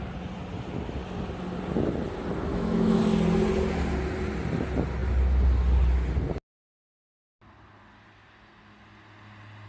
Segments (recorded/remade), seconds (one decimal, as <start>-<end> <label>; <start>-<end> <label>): 0.0-2.5 recorded; 2.5-3.0 remade; 3.0-9.7 recorded